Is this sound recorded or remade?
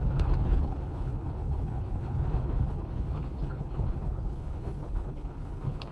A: remade